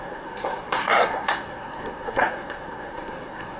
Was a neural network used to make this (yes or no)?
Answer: yes